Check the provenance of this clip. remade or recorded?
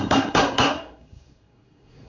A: remade